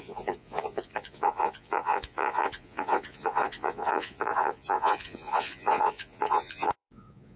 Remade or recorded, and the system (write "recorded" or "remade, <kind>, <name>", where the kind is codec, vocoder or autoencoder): remade, vocoder, Vocos